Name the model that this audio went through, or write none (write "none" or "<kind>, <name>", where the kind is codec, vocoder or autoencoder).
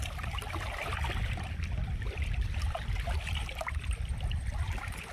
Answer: none